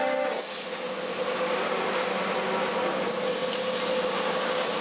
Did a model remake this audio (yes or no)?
no